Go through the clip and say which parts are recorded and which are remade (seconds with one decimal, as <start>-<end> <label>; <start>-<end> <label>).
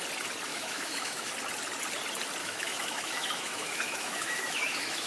0.0-0.5 recorded; 0.5-1.3 remade; 1.3-2.4 recorded; 2.4-5.1 remade